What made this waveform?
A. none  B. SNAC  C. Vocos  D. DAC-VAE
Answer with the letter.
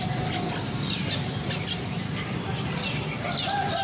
A